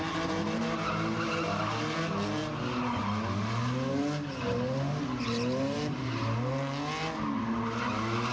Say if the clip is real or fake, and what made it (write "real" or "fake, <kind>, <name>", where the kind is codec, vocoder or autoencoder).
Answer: real